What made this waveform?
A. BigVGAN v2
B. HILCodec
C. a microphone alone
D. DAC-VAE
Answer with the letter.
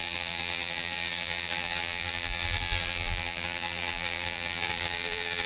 A